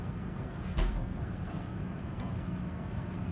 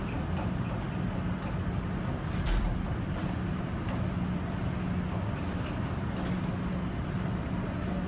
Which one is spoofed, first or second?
first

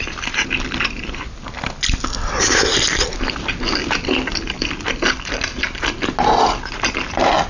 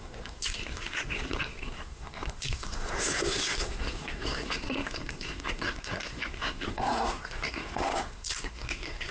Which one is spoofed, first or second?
second